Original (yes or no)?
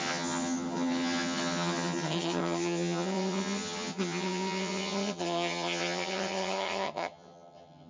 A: no